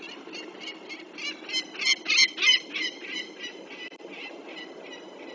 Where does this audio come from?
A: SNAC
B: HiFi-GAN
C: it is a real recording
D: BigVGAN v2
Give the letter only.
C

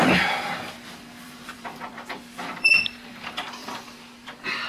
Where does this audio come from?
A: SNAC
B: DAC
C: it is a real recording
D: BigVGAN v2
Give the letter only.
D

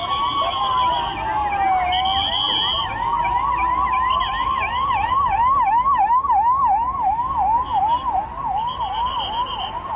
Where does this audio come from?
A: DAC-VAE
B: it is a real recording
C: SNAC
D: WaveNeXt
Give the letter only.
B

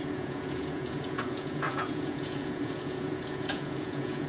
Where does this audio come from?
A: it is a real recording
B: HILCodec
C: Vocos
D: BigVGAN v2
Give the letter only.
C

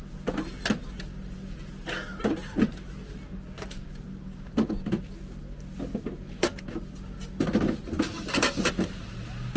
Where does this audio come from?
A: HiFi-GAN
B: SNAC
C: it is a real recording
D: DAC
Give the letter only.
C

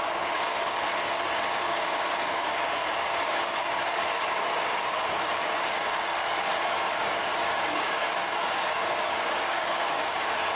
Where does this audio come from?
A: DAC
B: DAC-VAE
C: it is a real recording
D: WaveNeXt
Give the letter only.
A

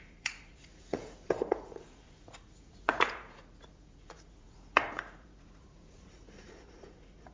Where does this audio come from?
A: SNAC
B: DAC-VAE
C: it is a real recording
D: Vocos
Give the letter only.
D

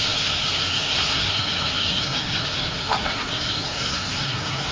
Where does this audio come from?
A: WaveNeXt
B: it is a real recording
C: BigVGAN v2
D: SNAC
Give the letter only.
D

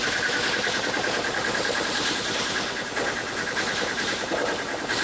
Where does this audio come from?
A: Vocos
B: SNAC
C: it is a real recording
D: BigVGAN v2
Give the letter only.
D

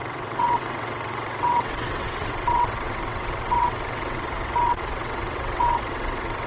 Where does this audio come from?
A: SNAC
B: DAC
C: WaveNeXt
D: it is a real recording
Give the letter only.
C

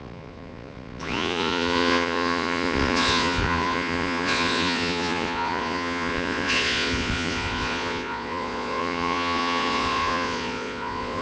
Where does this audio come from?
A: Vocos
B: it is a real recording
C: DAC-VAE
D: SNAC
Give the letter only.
A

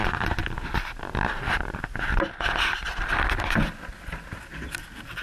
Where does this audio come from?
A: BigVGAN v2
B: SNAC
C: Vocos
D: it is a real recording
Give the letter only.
D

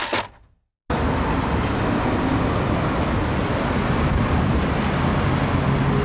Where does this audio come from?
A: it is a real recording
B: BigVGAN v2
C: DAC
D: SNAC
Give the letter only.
A